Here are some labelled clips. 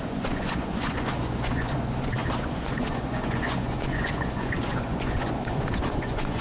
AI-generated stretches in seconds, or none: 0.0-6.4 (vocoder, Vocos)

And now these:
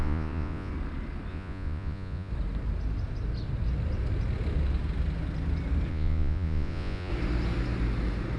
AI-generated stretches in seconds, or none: 0.0-0.7 (vocoder, Vocos); 1.3-2.3; 5.9-7.1

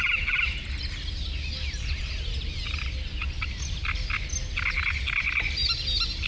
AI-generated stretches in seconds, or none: none

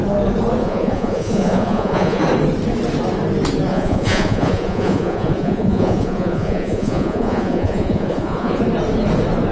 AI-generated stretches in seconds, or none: 0.6-2.2 (vocoder, Vocos); 3.7-8.6

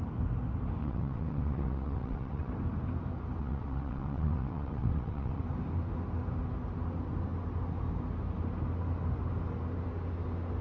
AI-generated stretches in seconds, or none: 0.8-2.5 (vocoder, WaveNeXt); 3.4-5.4

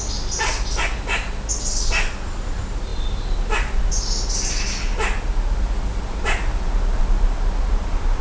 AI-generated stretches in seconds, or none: none